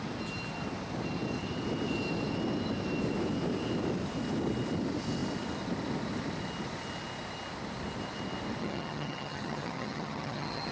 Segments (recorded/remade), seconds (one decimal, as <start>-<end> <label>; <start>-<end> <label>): 0.0-8.6 recorded; 8.6-10.7 remade